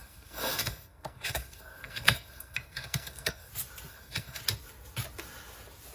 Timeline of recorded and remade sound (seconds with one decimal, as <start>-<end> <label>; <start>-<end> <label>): 0.0-3.5 remade; 3.5-3.9 recorded; 3.9-4.4 remade; 4.4-5.9 recorded